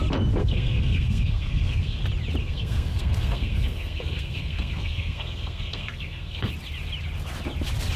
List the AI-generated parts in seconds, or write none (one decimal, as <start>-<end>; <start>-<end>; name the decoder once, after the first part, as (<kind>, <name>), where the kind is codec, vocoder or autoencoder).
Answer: 0.4-2.0 (codec, SNAC); 2.4-6.5